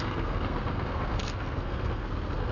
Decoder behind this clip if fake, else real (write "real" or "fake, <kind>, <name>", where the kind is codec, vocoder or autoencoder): fake, codec, SNAC